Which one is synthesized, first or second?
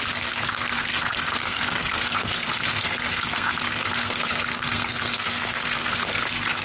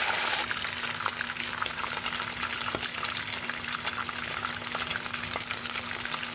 first